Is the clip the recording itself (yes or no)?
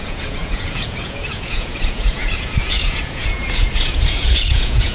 no